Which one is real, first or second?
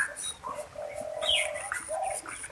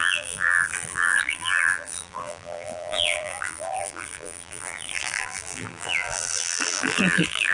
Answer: first